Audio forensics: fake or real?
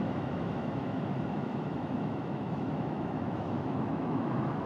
fake